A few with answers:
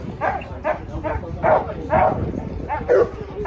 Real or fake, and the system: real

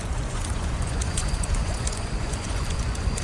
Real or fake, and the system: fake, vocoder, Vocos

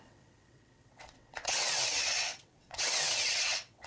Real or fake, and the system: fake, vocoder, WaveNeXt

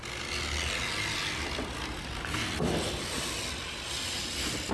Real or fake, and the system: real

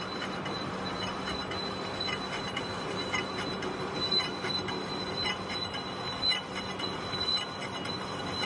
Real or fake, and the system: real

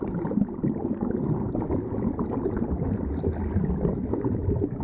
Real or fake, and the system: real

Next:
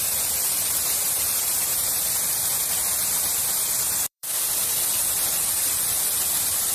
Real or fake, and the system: fake, vocoder, BigVGAN v2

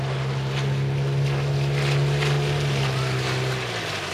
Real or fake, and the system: real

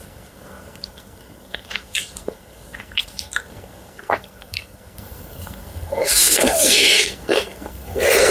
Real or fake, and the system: fake, codec, SNAC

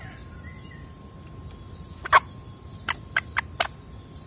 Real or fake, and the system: real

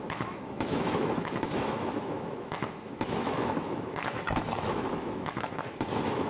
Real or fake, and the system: fake, autoencoder, DAC-VAE